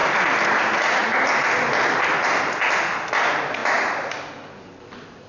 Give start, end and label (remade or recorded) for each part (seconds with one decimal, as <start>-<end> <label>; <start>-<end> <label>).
0.0-5.3 recorded

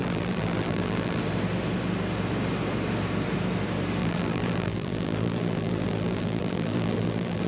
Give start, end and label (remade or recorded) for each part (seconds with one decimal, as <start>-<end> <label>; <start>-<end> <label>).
0.0-1.2 remade; 1.2-4.0 recorded; 4.0-7.5 remade

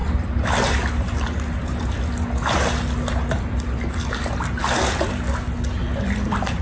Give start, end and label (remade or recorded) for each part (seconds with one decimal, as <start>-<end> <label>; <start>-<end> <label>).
0.0-6.6 recorded

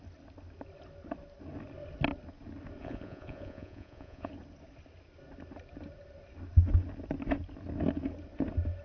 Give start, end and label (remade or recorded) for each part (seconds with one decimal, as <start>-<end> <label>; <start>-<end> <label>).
0.0-2.8 recorded; 2.8-4.3 remade; 4.3-8.8 recorded

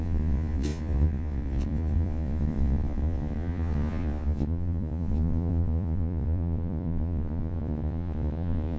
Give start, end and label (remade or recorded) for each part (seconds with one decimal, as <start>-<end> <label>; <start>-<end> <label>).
0.0-8.8 remade